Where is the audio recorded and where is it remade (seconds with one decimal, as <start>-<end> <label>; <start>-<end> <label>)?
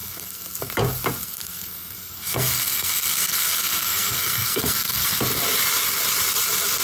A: 0.0-0.7 remade; 0.7-1.2 recorded; 1.2-5.2 remade; 5.2-6.8 recorded